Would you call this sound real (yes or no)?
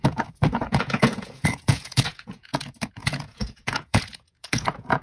no